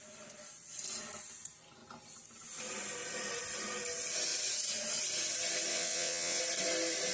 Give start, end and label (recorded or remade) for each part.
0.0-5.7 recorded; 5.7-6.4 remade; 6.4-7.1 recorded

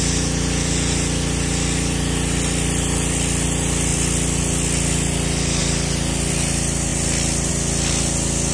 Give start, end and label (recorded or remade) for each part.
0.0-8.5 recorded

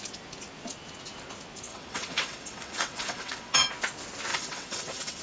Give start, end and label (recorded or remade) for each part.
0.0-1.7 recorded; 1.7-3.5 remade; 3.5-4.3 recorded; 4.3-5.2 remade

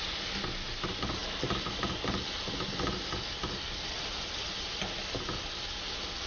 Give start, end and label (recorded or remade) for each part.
0.0-6.3 recorded